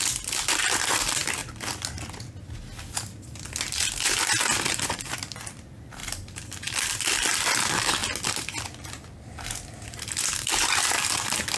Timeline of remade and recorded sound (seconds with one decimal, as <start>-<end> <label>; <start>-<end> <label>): 0.0-1.4 remade; 1.4-4.0 recorded; 4.0-8.0 remade; 8.0-10.4 recorded; 10.4-11.6 remade